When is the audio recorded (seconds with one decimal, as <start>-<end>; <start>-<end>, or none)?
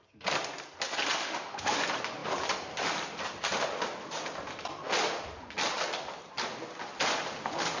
0.0-1.2; 1.8-7.8